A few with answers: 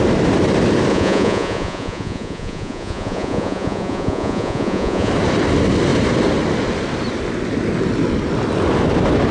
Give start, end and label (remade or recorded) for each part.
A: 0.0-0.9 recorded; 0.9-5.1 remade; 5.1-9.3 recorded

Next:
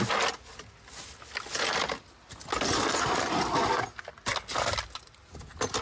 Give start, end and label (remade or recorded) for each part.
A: 0.0-5.8 recorded

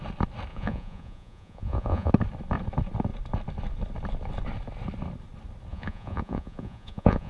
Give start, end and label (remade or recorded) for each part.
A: 0.0-0.5 recorded; 0.5-2.1 remade; 2.1-5.7 recorded; 5.7-7.3 remade

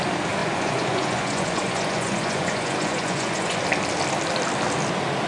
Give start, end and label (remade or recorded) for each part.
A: 0.0-0.4 recorded; 0.4-3.6 remade; 3.6-5.3 recorded